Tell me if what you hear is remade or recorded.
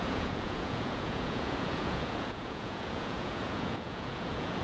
remade